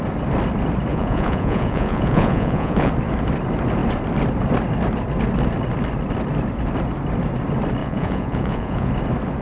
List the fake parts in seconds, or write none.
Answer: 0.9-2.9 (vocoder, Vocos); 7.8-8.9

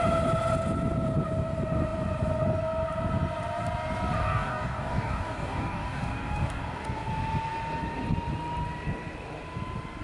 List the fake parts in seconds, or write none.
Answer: 4.2-7.1 (codec, DAC)

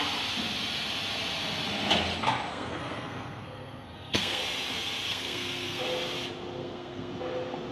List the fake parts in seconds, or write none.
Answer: 2.5-4.4 (codec, SNAC); 5.1-5.8; 6.6-7.1